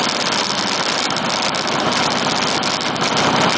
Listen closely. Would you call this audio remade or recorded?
recorded